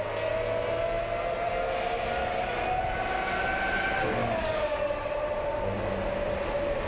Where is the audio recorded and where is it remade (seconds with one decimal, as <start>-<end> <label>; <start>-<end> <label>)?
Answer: 0.0-2.2 recorded; 2.2-2.8 remade; 2.8-4.2 recorded; 4.2-4.9 remade; 4.9-6.9 recorded